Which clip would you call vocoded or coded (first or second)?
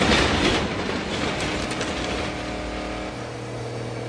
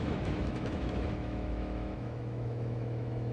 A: second